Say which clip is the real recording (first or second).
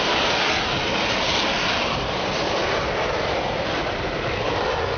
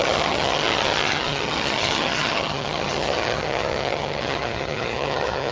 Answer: first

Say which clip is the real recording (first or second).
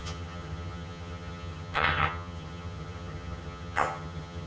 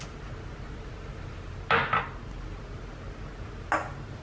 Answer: second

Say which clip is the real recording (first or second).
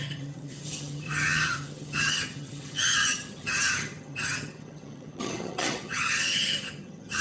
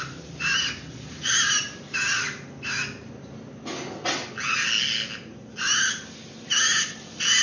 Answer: second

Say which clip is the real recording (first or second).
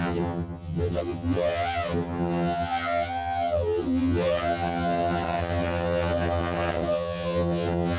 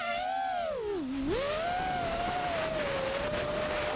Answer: second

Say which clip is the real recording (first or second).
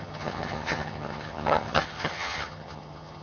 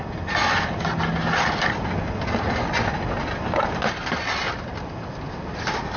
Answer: second